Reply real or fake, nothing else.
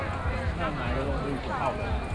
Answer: real